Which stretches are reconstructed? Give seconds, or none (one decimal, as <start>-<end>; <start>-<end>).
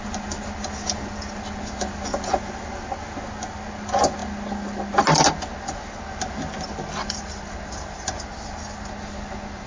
none